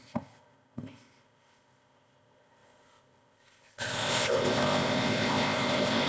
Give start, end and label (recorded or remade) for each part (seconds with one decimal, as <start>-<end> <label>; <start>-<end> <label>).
0.0-6.1 remade